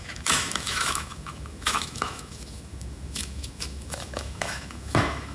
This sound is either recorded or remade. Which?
remade